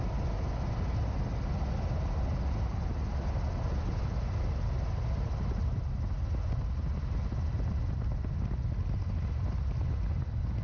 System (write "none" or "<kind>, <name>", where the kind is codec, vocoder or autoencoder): none